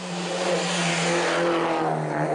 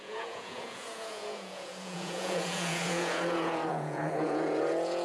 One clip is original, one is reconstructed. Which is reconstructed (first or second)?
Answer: second